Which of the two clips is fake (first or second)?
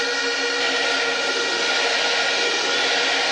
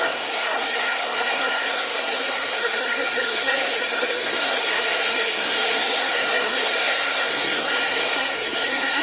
second